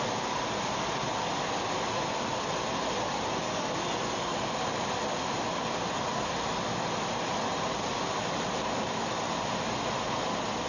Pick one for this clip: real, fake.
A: real